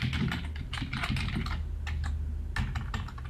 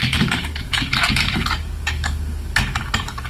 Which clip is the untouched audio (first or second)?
first